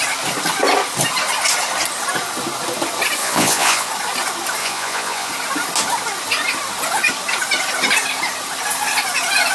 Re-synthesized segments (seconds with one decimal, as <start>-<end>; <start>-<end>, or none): 3.2-3.9; 4.6-5.3

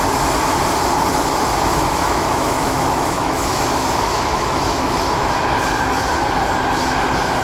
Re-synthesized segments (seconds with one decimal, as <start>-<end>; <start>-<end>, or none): 1.7-5.3